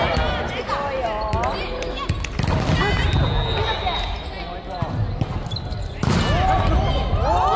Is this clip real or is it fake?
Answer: real